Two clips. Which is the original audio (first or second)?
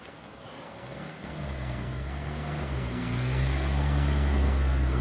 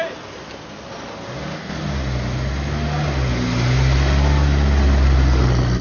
second